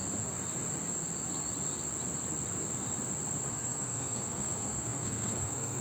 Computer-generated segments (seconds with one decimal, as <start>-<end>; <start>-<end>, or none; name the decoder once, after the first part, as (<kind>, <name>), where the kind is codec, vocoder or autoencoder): 3.5-5.8 (codec, SNAC)